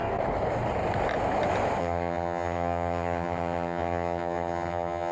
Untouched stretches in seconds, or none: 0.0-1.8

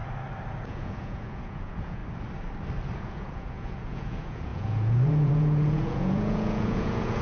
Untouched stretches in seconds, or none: 0.0-0.6; 2.0-3.0

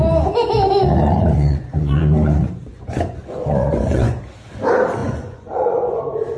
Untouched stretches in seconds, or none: 0.0-1.0; 4.2-5.0; 6.0-6.4

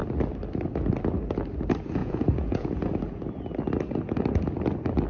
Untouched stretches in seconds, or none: 0.0-2.0; 2.7-5.1

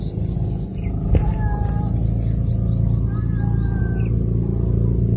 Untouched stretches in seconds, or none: 0.0-5.2